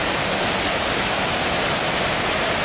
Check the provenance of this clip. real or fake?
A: real